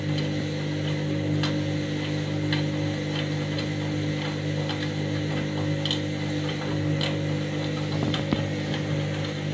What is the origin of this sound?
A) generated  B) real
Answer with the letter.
B